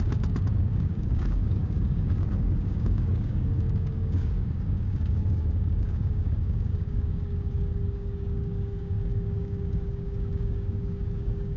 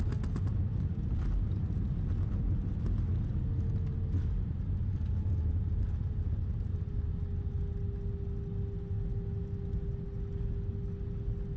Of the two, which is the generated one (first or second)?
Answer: first